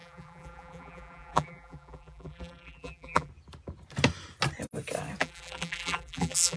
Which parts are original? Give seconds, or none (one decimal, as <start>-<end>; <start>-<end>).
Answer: 3.3-5.2